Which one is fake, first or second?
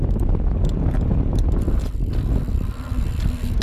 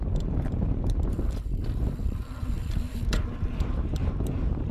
second